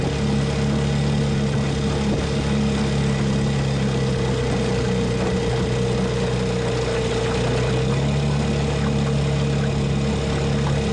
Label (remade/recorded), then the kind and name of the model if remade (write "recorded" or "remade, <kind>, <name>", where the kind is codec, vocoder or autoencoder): recorded